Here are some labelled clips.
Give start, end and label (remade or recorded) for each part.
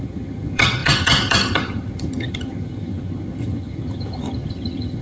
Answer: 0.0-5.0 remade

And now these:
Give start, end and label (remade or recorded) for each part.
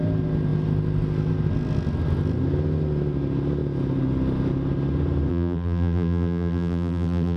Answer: 0.0-5.3 recorded; 5.3-7.4 remade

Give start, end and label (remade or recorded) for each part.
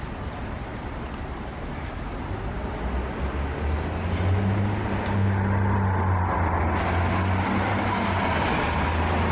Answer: 0.0-9.3 recorded